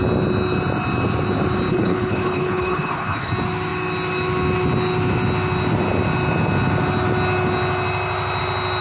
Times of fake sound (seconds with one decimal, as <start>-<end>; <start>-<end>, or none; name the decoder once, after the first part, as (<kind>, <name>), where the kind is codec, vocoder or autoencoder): 1.7-3.3 (codec, HILCodec)